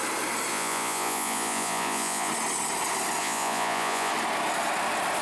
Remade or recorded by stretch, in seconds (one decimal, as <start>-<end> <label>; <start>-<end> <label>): 0.0-0.5 recorded; 0.5-2.3 remade; 2.3-3.2 recorded; 3.2-4.1 remade; 4.1-5.2 recorded